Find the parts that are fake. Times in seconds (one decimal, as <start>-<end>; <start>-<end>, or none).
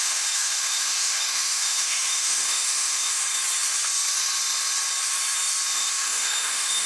0.0-3.2; 5.7-6.9